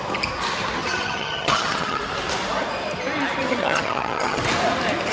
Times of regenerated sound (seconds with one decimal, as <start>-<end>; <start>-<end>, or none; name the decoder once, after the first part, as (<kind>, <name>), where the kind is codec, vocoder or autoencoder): 0.8-2.0 (vocoder, HiFi-GAN); 3.4-4.4